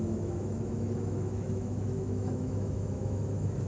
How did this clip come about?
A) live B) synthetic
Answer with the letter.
B